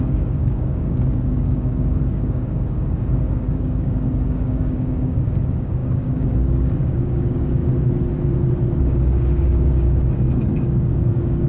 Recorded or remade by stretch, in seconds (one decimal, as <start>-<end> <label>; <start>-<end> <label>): 0.0-7.6 remade; 7.6-8.8 recorded; 8.8-11.5 remade